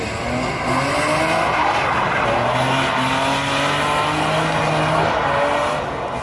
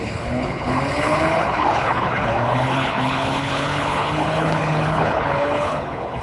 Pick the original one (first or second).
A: first